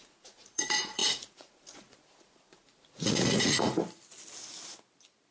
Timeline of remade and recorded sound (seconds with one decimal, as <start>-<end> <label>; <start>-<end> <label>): 0.0-3.8 remade; 3.8-5.3 recorded